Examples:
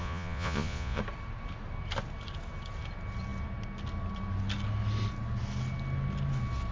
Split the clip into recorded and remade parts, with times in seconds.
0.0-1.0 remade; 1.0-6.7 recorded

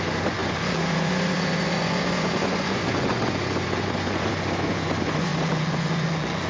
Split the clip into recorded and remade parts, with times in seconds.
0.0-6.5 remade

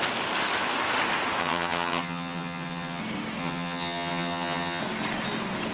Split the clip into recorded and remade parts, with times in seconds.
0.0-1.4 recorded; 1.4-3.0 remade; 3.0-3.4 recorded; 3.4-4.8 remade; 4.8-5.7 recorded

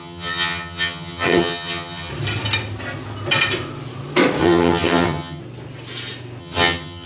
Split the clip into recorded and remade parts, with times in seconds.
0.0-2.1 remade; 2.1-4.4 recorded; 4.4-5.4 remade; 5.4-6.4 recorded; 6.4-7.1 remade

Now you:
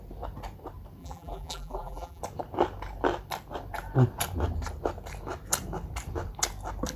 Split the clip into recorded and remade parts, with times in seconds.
0.0-1.0 recorded; 1.0-2.2 remade; 2.2-7.0 recorded

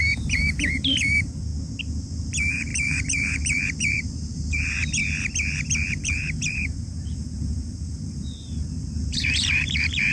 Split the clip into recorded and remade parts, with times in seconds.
0.0-1.5 remade; 1.5-2.0 recorded; 2.0-5.0 remade; 5.0-5.9 recorded; 5.9-10.1 remade